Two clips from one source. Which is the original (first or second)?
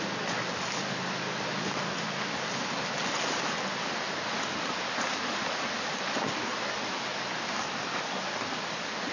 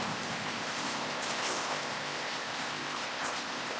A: first